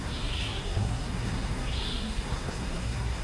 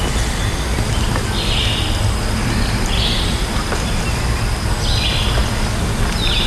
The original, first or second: second